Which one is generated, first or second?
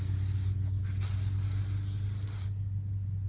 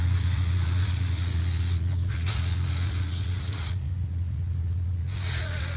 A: second